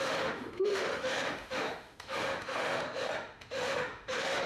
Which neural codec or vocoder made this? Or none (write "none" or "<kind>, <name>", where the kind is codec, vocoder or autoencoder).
autoencoder, DAC-VAE